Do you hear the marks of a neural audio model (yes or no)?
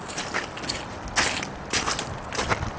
no